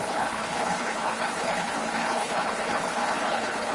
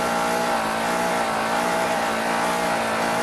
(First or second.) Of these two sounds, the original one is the second